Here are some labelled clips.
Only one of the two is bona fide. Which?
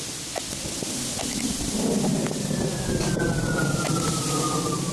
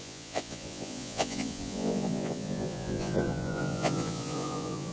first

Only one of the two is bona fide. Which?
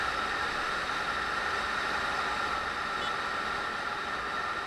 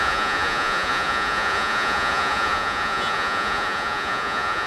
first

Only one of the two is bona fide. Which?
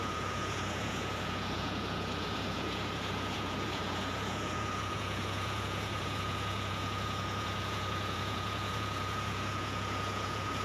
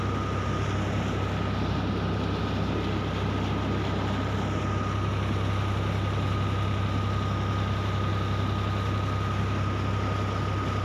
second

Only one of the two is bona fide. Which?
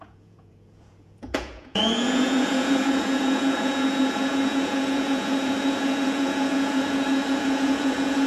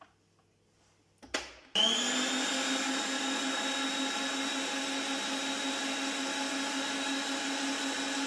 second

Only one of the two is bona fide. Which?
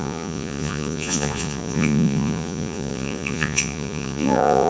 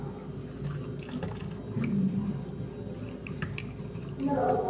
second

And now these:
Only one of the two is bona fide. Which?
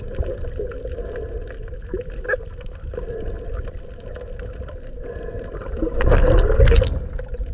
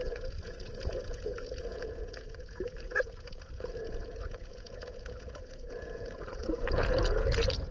first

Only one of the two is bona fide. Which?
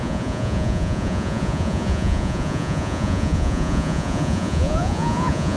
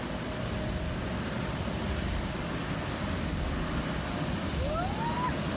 second